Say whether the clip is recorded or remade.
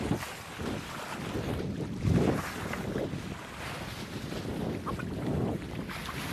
recorded